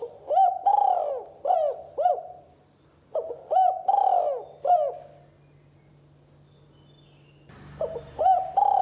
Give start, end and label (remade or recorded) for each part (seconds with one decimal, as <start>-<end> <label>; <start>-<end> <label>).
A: 0.0-8.8 recorded